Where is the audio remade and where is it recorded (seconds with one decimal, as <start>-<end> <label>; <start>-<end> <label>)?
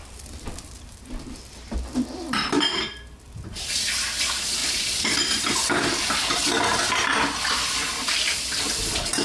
0.0-7.1 remade; 7.1-7.7 recorded; 7.7-9.2 remade